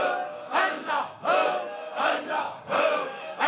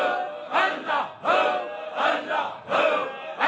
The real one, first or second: second